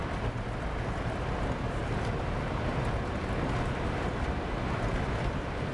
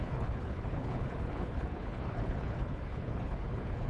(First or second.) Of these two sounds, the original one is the first